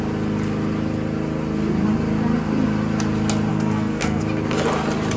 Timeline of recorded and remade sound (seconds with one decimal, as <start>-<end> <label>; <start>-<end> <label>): 0.0-3.5 recorded; 3.5-4.2 remade; 4.2-5.2 recorded